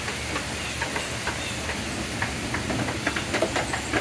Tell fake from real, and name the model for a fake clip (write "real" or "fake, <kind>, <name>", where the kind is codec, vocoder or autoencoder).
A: real